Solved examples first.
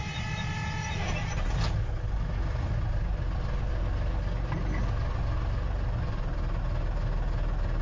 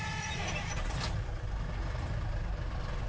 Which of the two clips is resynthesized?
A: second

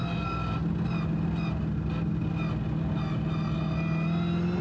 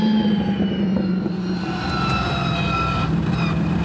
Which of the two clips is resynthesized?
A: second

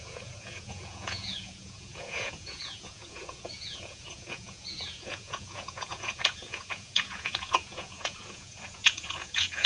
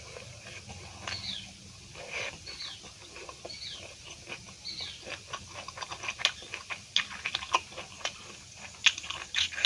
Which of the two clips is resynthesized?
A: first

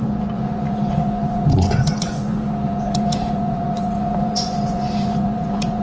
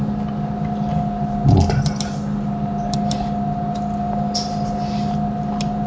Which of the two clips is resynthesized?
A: first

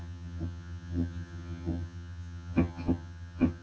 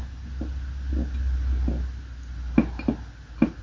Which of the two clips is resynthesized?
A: first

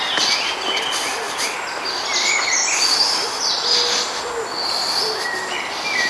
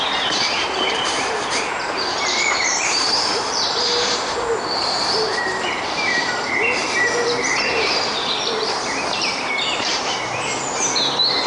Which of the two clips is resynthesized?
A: second